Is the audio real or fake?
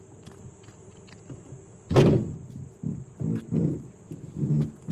real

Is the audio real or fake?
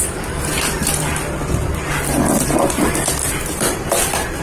real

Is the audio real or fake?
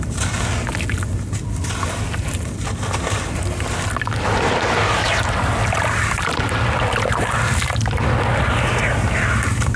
real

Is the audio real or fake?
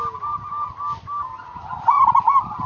real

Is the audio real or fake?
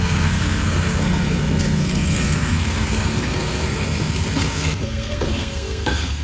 fake